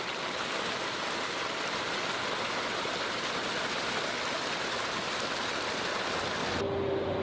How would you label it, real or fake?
real